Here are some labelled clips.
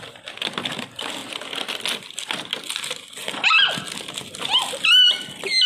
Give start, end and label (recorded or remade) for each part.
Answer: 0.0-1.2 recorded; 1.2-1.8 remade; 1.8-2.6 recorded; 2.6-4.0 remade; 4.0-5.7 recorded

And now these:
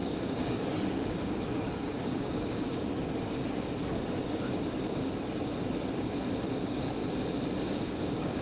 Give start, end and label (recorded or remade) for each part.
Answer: 0.0-2.9 remade; 2.9-6.6 recorded; 6.6-7.0 remade; 7.0-7.7 recorded; 7.7-8.4 remade

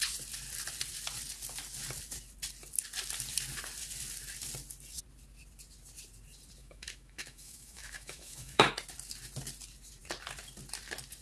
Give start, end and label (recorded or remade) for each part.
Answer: 0.0-6.6 recorded; 6.6-8.7 remade; 8.7-11.2 recorded

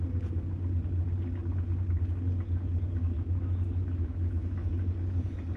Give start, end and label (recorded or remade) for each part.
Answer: 0.0-3.0 recorded; 3.0-4.7 remade; 4.7-5.6 recorded